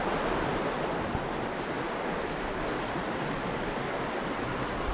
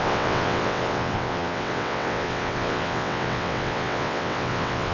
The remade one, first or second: second